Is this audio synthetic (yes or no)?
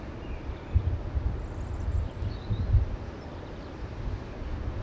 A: no